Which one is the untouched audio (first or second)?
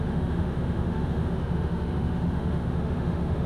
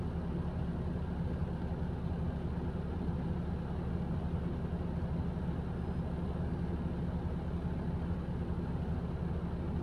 second